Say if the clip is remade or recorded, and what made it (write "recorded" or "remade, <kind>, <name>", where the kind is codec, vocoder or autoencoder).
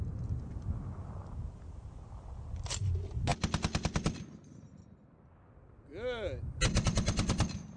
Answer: recorded